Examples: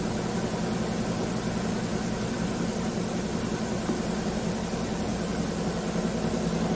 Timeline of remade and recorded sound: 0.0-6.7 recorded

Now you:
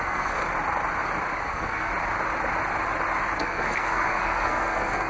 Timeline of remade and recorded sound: 0.0-0.4 remade; 0.4-1.4 recorded; 1.4-1.9 remade; 1.9-3.4 recorded; 3.4-5.1 remade

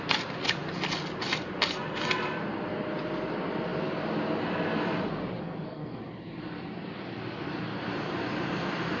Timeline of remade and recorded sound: 0.0-5.4 recorded; 5.4-6.0 remade; 6.0-9.0 recorded

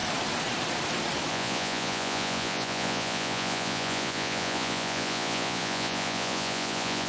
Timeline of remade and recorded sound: 0.0-1.3 recorded; 1.3-7.1 remade

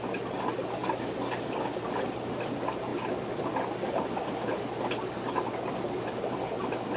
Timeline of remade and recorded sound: 0.0-7.0 recorded

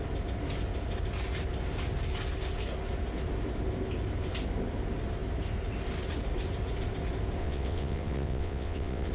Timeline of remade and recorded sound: 0.0-7.4 recorded; 7.4-9.1 remade